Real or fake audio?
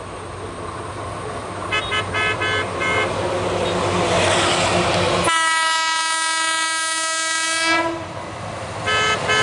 real